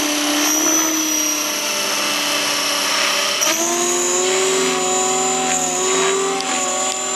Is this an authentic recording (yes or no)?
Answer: yes